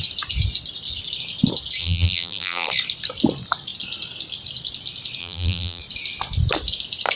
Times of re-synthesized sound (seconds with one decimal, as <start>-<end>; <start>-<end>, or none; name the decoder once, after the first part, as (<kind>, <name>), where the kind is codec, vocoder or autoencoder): 1.8-2.7 (vocoder, BigVGAN v2); 5.2-5.8